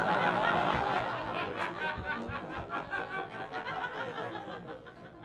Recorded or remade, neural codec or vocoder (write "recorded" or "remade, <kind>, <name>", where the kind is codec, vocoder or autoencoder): remade, vocoder, BigVGAN v2